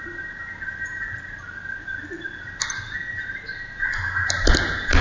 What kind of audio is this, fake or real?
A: real